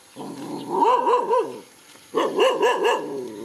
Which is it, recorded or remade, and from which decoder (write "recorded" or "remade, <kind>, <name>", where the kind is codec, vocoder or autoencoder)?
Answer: recorded